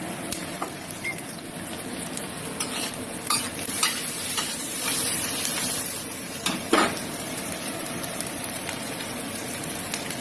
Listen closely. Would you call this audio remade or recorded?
remade